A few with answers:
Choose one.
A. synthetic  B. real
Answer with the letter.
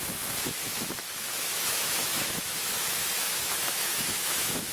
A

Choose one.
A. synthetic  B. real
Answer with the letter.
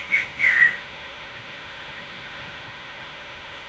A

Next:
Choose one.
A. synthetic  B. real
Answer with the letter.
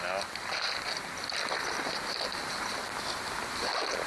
B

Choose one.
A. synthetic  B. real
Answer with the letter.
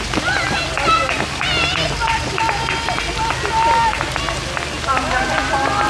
B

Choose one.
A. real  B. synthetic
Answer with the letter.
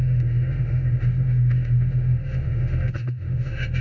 B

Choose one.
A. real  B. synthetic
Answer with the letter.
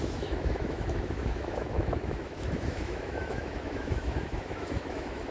B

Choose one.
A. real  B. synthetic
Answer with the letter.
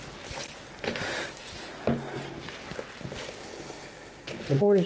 A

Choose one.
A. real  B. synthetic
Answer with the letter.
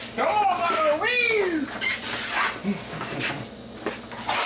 A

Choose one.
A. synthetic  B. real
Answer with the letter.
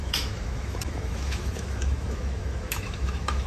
A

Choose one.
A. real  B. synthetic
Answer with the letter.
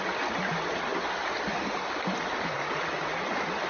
A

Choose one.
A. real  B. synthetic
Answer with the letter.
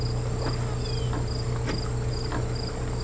A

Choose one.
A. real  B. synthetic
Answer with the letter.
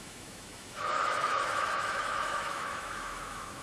B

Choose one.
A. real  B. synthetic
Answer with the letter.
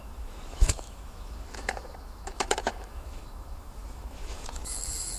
B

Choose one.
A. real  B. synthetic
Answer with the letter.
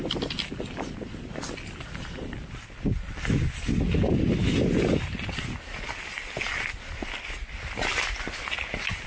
A